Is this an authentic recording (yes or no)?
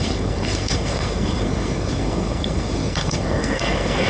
no